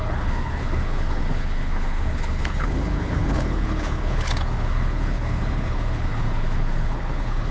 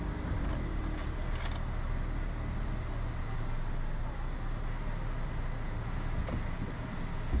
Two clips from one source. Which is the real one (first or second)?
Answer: second